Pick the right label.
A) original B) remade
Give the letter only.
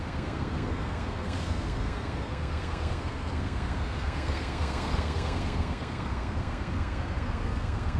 B